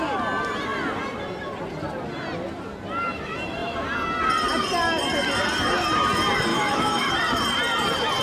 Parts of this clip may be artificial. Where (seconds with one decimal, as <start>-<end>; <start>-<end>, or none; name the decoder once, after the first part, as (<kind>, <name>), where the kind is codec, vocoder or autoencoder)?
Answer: 6.5-7.1 (autoencoder, DAC-VAE)